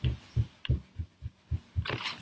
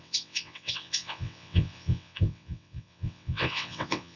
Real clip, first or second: first